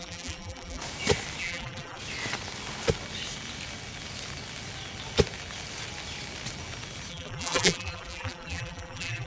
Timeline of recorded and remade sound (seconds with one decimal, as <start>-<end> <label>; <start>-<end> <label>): 0.0-0.8 remade; 0.8-1.4 recorded; 1.4-2.0 remade; 2.0-7.1 recorded; 7.1-9.3 remade